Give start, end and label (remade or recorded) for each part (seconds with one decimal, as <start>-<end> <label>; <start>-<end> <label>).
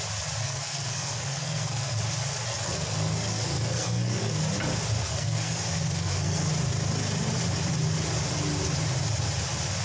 0.0-0.4 recorded; 0.4-2.0 remade; 2.0-2.5 recorded; 2.5-4.4 remade; 4.4-5.0 recorded; 5.0-6.5 remade; 6.5-9.8 recorded